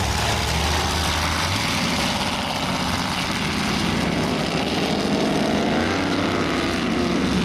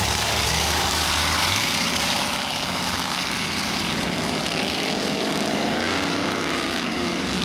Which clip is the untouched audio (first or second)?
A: first